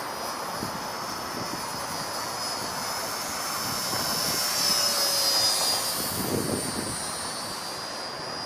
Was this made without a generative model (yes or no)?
yes